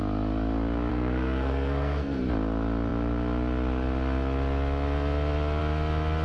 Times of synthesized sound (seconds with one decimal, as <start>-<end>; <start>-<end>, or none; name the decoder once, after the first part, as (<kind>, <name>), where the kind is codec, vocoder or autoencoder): 0.9-2.2 (codec, SNAC)